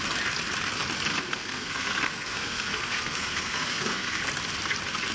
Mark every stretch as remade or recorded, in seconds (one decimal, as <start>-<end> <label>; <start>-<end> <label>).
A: 0.0-1.1 recorded; 1.1-4.2 remade; 4.2-5.1 recorded